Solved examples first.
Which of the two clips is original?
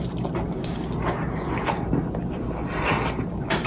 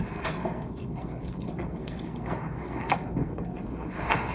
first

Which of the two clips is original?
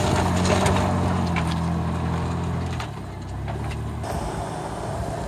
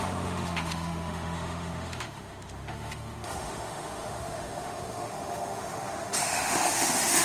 first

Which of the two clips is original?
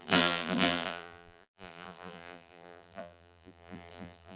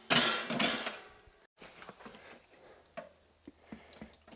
second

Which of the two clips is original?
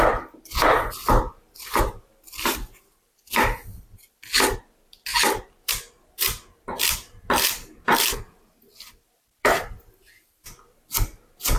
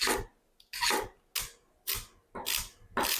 second